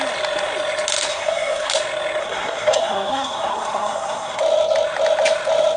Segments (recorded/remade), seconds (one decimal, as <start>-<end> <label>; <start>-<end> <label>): 0.0-1.1 recorded; 1.1-1.7 remade; 1.7-2.2 recorded; 2.2-4.4 remade; 4.4-5.8 recorded